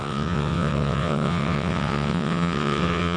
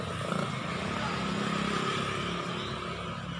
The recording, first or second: second